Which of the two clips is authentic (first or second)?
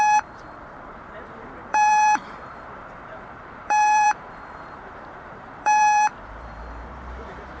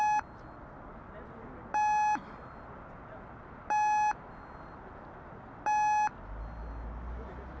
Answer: second